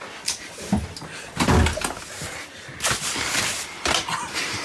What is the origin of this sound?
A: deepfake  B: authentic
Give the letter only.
A